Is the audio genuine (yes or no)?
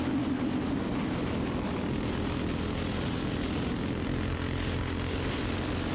yes